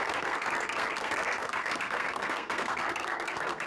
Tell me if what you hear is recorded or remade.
remade